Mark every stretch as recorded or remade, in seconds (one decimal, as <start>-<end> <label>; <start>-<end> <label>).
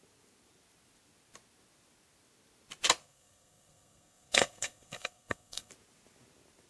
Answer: 0.0-3.0 recorded; 3.0-5.7 remade; 5.7-6.7 recorded